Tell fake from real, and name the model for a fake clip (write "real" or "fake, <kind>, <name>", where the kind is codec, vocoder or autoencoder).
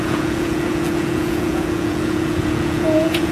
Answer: fake, vocoder, Vocos